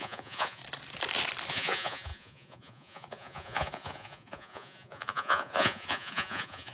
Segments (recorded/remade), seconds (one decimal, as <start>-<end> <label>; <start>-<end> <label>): 0.0-0.6 remade; 0.6-1.5 recorded; 1.5-6.7 remade